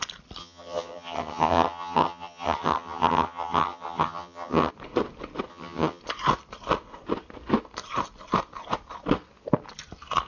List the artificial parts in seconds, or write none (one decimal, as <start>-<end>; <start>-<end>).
0.4-4.7; 5.5-6.0